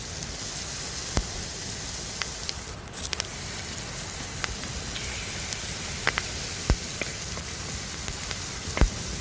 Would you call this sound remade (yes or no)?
no